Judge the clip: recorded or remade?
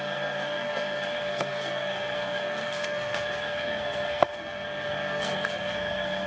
remade